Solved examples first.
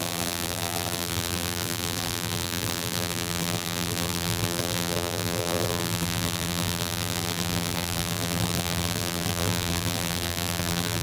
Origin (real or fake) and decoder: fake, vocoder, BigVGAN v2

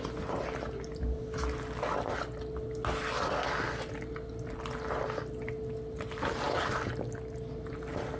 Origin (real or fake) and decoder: real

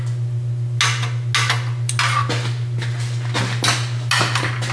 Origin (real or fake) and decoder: real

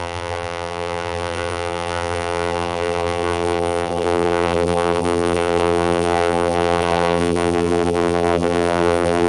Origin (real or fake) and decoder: fake, vocoder, BigVGAN v2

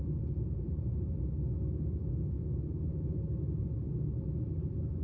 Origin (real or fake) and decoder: fake, vocoder, BigVGAN v2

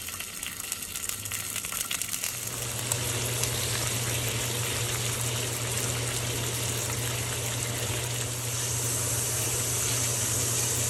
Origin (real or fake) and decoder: real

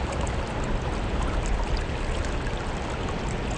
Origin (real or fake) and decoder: real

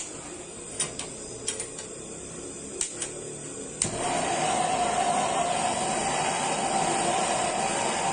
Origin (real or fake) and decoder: real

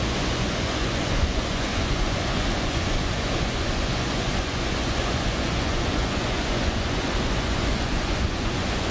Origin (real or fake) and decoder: fake, vocoder, Vocos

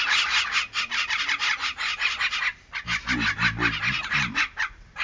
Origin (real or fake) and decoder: real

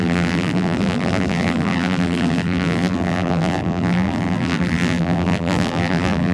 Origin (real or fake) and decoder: fake, vocoder, BigVGAN v2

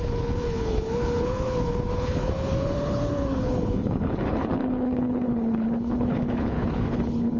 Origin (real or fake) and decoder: fake, codec, HILCodec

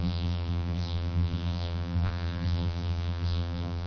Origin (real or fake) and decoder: fake, vocoder, BigVGAN v2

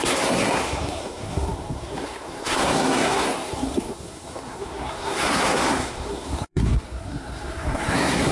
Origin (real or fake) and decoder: fake, codec, SNAC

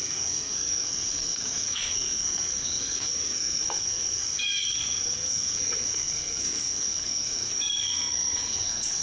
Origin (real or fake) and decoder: fake, codec, SNAC